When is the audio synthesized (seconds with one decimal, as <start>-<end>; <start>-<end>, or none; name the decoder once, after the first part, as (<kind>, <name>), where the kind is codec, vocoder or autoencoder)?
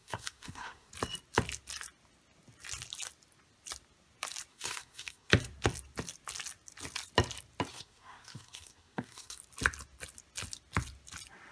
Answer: 0.0-0.9 (codec, SNAC); 4.5-5.3; 7.7-9.4